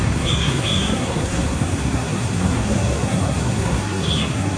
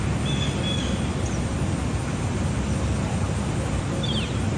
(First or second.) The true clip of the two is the second